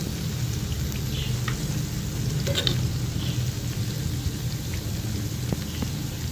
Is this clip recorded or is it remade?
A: recorded